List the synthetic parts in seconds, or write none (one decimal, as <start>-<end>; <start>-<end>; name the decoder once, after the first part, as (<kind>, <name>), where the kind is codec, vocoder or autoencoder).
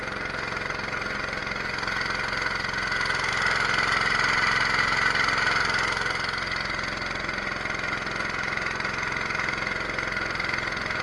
none